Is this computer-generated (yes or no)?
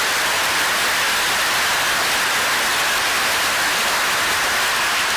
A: no